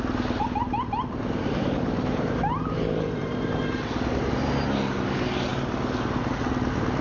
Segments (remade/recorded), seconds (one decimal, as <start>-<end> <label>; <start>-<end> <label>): 0.0-0.7 recorded; 0.7-3.6 remade; 3.6-7.0 recorded